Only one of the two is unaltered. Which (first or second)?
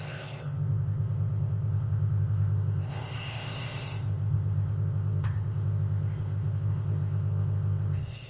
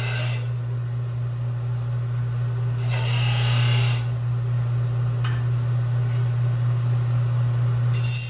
second